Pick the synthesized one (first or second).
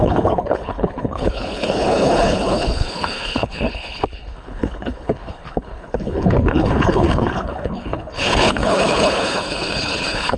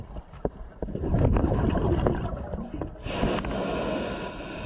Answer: first